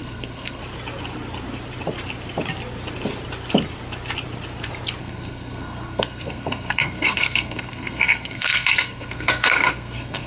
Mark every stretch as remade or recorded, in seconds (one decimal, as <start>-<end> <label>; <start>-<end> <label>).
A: 0.0-0.6 remade; 0.6-5.0 recorded; 5.0-10.3 remade